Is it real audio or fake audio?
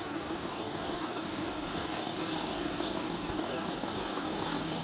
fake